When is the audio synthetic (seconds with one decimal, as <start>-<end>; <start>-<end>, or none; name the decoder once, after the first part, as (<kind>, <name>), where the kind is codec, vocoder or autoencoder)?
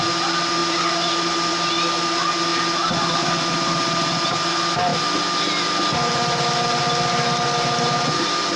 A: none